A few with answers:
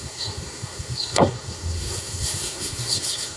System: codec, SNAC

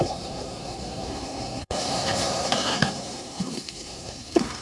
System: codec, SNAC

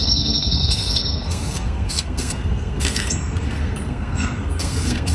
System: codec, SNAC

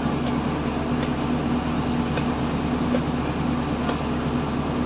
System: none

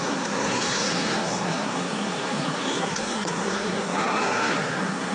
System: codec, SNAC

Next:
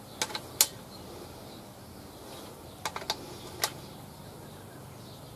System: none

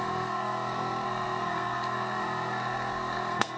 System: codec, SNAC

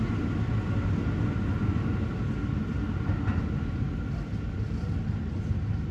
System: none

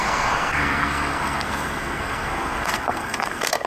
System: codec, SNAC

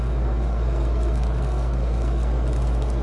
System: codec, SNAC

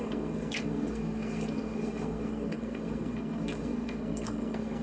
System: codec, SNAC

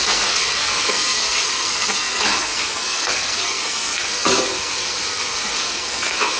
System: codec, SNAC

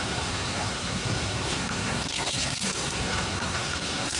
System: codec, SNAC